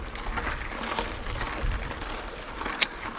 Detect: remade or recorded recorded